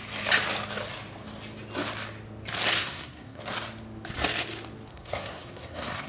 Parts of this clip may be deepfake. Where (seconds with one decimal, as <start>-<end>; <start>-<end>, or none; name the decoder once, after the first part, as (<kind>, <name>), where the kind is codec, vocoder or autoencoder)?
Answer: 2.8-3.4 (codec, SNAC); 4.9-6.1